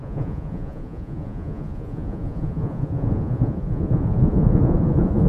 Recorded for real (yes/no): no